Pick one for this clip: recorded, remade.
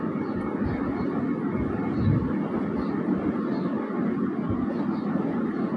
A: recorded